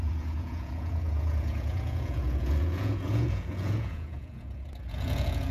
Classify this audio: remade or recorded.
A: remade